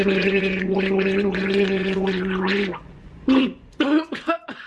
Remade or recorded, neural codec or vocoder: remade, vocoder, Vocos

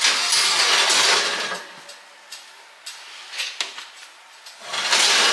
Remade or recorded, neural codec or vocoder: recorded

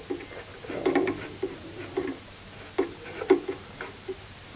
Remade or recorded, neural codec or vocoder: recorded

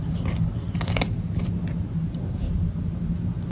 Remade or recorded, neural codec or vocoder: recorded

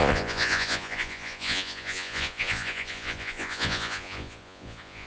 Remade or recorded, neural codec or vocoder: remade, vocoder, Vocos